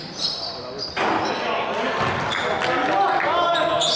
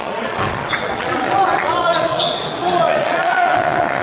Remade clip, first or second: second